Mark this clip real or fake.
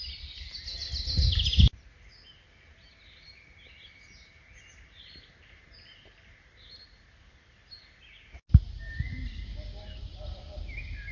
real